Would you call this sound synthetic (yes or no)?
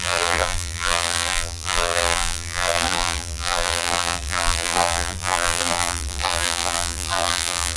yes